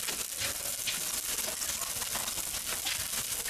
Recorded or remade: recorded